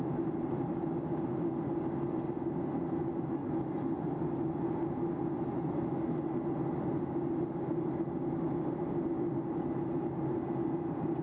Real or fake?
real